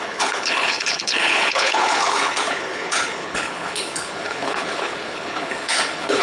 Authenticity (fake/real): fake